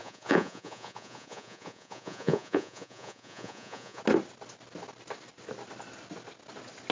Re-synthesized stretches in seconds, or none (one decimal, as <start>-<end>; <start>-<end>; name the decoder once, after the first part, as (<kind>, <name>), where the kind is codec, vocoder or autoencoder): 0.0-4.0 (vocoder, Vocos)